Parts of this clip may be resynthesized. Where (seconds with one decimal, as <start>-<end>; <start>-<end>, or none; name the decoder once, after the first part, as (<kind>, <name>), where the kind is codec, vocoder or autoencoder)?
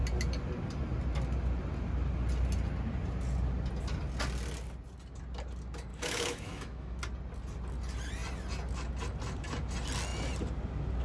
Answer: 5.9-7.0 (autoencoder, DAC-VAE)